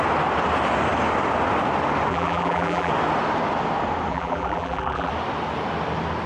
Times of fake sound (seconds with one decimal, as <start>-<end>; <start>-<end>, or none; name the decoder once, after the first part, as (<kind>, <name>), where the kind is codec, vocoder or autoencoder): 2.1-2.9 (vocoder, BigVGAN v2); 4.1-5.1